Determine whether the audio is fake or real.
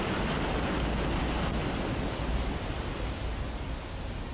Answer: real